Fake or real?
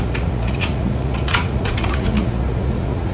fake